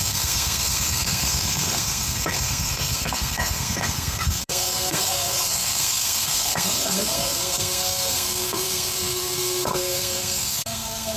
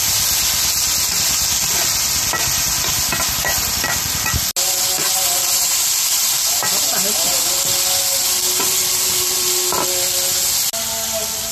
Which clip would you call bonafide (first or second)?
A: second